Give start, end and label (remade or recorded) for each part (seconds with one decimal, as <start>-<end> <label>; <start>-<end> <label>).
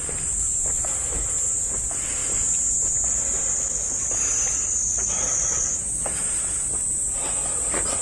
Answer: 0.0-8.0 recorded